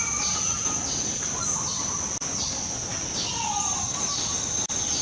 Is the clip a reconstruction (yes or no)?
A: no